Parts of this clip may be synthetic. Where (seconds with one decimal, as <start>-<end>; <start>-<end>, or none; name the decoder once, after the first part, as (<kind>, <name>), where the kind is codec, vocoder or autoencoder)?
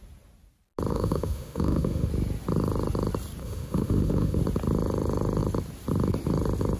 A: 0.9-2.1 (autoencoder, DAC-VAE); 3.4-4.4